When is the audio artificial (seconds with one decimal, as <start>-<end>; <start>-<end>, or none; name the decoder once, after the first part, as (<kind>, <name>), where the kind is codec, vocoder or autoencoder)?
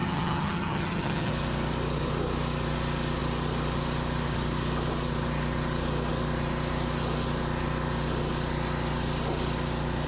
0.0-1.3 (vocoder, HiFi-GAN)